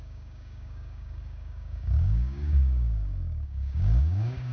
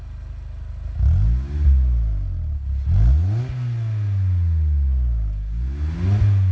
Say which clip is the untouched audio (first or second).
second